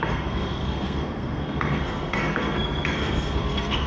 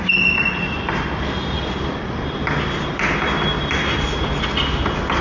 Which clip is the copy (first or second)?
first